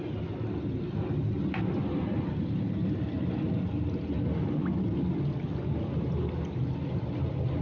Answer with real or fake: real